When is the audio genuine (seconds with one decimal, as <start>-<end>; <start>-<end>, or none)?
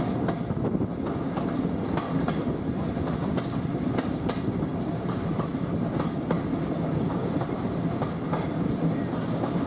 0.0-9.7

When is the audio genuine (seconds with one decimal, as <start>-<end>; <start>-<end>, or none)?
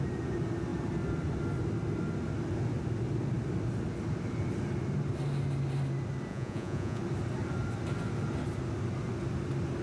0.0-6.3; 7.0-9.8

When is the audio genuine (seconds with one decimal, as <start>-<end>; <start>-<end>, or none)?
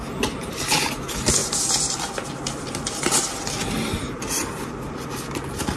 0.0-1.4; 4.9-5.8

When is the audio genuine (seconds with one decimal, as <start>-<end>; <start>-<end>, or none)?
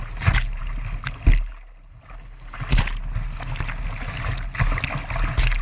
0.0-5.6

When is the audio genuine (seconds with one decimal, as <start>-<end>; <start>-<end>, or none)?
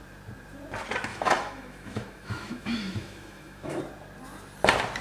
0.0-1.1; 3.8-5.0